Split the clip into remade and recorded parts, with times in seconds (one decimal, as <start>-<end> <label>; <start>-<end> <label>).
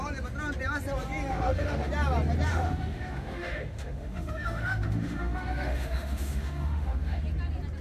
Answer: 0.0-1.3 recorded; 1.3-1.9 remade; 1.9-2.5 recorded; 2.5-7.2 remade; 7.2-7.8 recorded